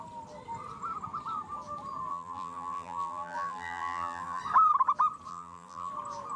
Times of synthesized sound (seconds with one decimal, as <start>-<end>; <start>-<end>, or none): 2.1-4.4; 5.3-5.9